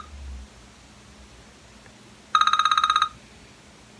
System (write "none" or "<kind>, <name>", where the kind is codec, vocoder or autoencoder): none